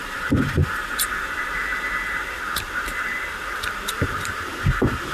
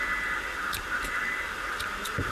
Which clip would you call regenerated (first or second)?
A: first